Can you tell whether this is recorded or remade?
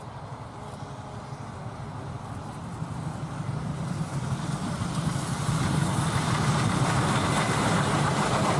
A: recorded